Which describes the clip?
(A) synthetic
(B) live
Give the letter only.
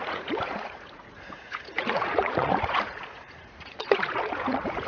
A